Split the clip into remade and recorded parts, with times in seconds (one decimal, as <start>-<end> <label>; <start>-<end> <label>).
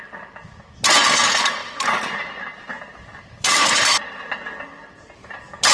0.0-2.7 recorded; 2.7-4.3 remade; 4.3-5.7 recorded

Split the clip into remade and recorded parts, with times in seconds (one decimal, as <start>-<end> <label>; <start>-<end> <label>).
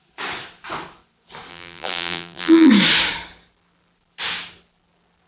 0.0-1.5 recorded; 1.5-2.7 remade; 2.7-5.3 recorded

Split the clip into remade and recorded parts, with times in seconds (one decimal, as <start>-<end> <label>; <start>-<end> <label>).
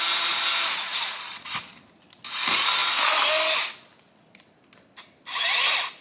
0.0-6.0 recorded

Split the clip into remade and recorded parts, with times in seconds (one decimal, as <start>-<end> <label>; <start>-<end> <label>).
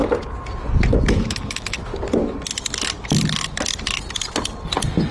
0.0-1.0 recorded; 1.0-1.9 remade; 1.9-5.1 recorded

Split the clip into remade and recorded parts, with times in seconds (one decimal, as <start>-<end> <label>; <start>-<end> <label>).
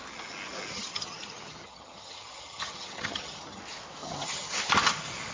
0.0-0.7 recorded; 0.7-3.6 remade; 3.6-4.0 recorded; 4.0-4.7 remade; 4.7-5.3 recorded